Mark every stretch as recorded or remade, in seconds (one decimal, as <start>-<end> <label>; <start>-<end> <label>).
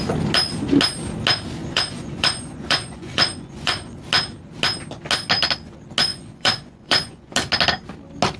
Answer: 0.0-1.6 recorded; 1.6-4.0 remade; 4.0-6.1 recorded; 6.1-7.3 remade; 7.3-8.4 recorded